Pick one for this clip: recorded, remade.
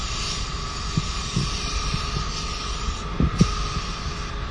recorded